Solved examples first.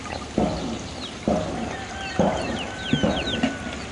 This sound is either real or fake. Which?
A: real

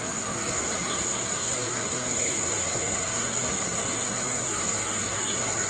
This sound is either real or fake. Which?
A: fake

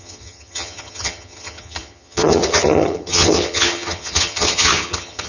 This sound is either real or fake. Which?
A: fake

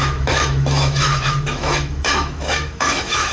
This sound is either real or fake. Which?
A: fake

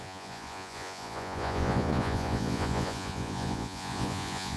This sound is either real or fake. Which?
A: fake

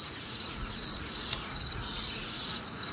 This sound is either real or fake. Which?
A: fake